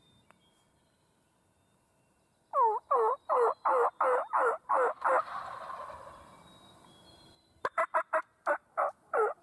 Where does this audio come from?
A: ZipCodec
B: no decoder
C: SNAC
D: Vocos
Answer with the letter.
B